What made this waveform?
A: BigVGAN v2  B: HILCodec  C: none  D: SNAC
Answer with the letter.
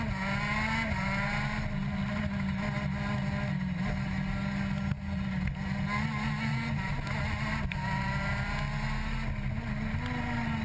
C